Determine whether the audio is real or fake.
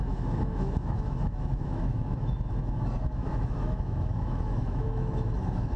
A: fake